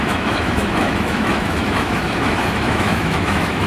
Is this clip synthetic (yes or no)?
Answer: yes